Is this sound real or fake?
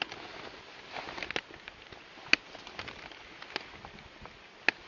real